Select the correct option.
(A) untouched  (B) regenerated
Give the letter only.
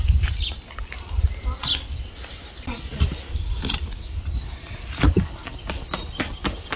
A